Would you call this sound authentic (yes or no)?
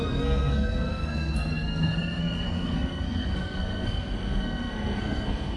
no